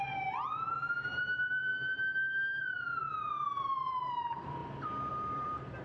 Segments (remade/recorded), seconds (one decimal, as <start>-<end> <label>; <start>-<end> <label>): 0.0-1.7 remade; 1.7-2.6 recorded; 2.6-4.6 remade; 4.6-5.1 recorded; 5.1-5.8 remade